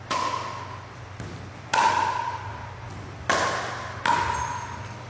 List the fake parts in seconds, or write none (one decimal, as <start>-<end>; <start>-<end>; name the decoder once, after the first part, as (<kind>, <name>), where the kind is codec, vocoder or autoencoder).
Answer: none